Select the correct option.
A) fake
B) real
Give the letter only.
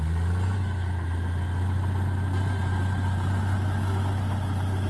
B